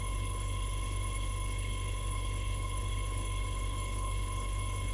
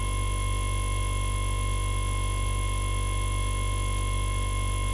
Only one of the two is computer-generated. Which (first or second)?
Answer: first